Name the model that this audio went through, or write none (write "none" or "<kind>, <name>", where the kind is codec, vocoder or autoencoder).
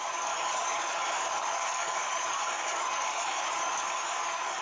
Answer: codec, DAC